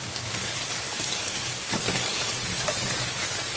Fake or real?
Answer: fake